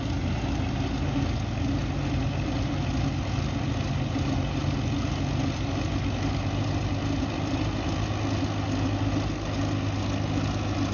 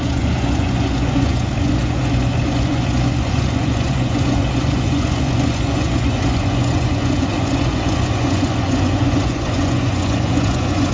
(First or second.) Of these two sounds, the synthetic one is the second